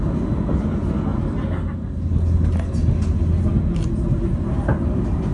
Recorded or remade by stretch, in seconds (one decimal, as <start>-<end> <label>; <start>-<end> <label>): 0.0-5.3 recorded